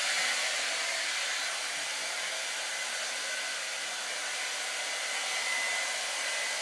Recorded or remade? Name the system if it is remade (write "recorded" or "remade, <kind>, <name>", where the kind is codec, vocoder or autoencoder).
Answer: recorded